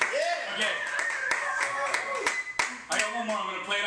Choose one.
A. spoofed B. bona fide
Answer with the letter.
B